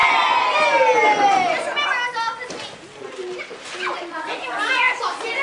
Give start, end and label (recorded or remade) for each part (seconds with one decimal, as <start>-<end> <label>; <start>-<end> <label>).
0.0-5.4 recorded